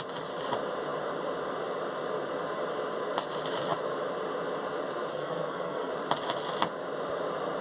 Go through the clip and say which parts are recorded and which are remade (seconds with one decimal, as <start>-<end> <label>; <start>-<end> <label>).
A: 0.0-5.1 recorded; 5.1-5.9 remade; 5.9-7.6 recorded